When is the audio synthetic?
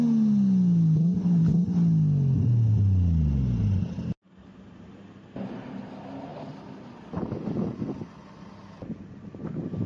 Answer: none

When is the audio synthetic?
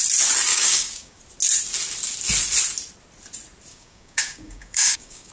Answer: 0.5-1.2; 3.7-5.3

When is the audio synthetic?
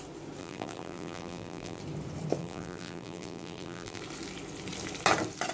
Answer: 0.4-1.8; 2.4-4.0